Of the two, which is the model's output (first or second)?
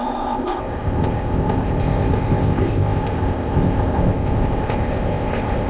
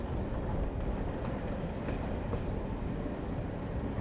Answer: first